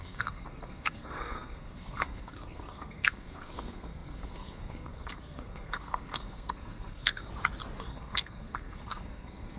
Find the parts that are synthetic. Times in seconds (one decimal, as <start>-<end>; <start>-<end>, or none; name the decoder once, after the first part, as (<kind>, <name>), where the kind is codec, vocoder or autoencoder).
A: 0.0-7.3 (codec, SNAC); 7.8-9.6